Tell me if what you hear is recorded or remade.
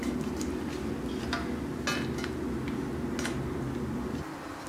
recorded